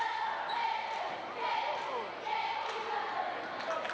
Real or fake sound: real